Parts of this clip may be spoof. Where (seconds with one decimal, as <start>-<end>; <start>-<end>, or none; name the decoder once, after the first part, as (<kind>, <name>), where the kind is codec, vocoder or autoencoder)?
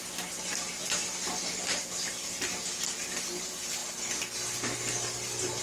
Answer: 0.8-2.9 (vocoder, BigVGAN v2); 3.8-5.6